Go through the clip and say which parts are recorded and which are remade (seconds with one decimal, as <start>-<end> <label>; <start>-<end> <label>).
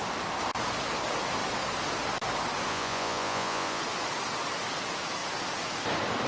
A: 0.0-2.7 recorded; 2.7-3.8 remade; 3.8-6.3 recorded